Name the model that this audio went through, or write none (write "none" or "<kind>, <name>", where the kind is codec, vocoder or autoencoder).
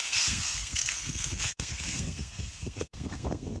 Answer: codec, SNAC